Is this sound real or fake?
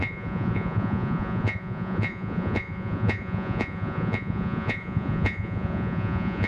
fake